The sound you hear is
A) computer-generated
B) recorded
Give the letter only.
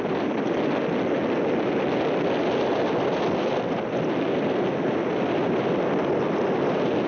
B